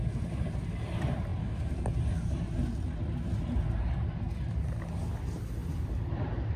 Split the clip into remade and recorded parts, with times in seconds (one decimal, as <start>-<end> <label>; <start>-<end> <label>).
0.0-0.6 remade; 0.6-6.6 recorded